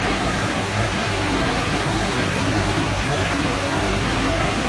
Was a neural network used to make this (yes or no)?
yes